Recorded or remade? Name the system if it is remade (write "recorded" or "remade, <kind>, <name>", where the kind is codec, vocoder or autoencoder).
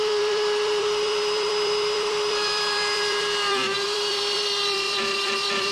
remade, vocoder, BigVGAN v2